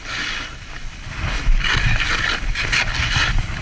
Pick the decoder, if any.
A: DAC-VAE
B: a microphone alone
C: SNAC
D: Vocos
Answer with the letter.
B